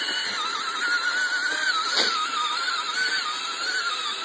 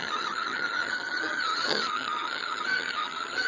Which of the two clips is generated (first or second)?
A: second